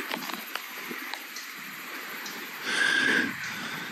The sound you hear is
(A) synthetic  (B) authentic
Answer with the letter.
B